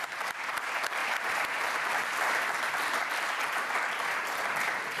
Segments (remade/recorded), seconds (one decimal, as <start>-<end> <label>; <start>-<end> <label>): 0.0-1.0 recorded; 1.0-2.6 remade; 2.6-5.0 recorded